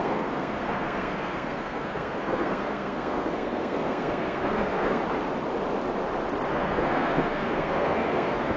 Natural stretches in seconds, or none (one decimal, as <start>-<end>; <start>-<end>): 5.0-6.5